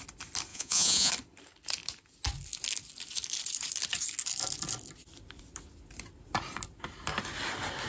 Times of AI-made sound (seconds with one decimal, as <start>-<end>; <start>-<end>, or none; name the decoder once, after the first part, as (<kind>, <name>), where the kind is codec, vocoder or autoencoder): 0.5-1.1 (vocoder, Vocos)